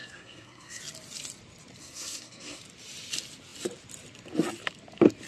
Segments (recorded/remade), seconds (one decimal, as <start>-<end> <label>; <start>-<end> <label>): 0.0-0.8 remade; 0.8-1.8 recorded; 1.8-2.6 remade; 2.6-5.3 recorded